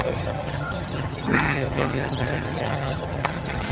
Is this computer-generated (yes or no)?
yes